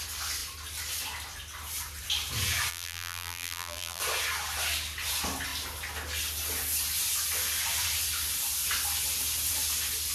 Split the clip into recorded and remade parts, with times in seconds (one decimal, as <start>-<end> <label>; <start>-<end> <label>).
0.0-2.7 recorded; 2.7-4.0 remade; 4.0-10.1 recorded